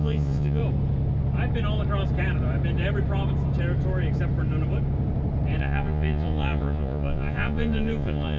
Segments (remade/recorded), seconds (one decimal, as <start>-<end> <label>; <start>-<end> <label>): 0.0-0.6 remade; 0.6-5.6 recorded; 5.6-8.4 remade